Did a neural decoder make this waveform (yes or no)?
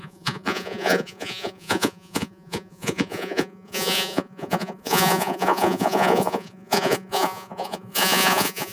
yes